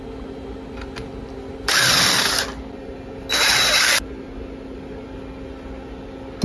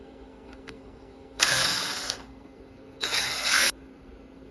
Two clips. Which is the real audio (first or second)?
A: first